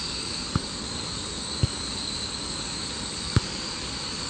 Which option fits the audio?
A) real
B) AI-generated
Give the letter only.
B